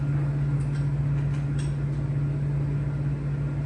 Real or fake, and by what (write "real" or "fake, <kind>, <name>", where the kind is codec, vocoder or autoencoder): real